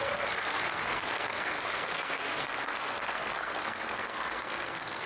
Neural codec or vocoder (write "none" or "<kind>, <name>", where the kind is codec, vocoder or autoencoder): codec, SNAC